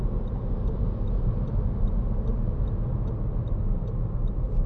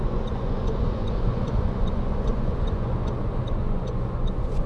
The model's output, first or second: second